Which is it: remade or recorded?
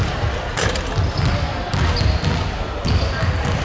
recorded